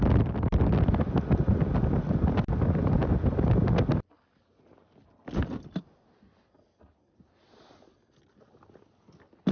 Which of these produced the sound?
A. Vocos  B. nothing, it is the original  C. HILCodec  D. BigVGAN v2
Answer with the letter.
B